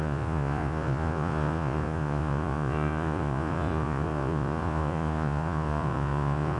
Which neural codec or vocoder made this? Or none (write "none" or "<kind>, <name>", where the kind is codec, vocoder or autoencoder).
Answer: vocoder, Vocos